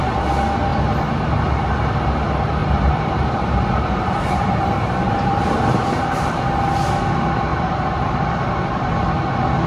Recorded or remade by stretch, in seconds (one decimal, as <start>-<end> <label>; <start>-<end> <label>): 0.0-2.6 recorded; 2.6-6.3 remade; 6.3-7.5 recorded; 7.5-8.3 remade; 8.3-9.7 recorded